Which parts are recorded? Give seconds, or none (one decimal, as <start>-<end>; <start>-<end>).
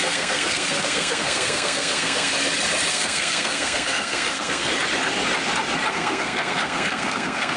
2.3-2.9; 4.7-5.9